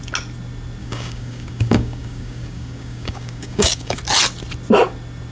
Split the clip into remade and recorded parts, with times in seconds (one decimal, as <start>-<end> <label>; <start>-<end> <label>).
0.0-0.8 recorded; 0.8-4.0 remade; 4.0-5.3 recorded